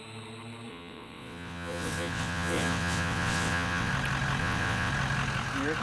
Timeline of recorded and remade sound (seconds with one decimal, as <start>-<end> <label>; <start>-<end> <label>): 0.0-0.7 recorded; 0.7-3.9 remade; 3.9-4.4 recorded; 4.4-4.9 remade; 4.9-5.8 recorded